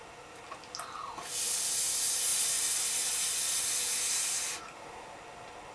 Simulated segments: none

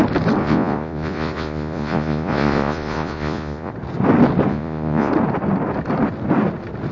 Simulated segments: 0.4-3.7; 4.5-5.1